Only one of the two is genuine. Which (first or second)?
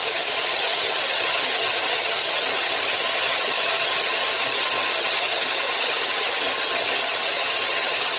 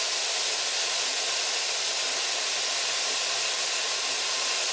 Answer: second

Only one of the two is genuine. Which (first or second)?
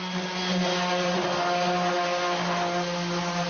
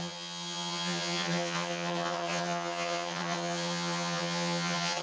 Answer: first